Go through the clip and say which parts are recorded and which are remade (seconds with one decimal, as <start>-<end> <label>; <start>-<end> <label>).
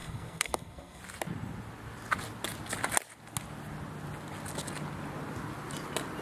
0.0-1.0 remade; 1.0-6.2 recorded